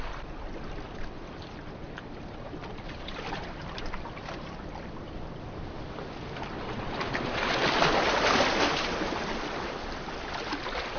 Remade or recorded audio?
recorded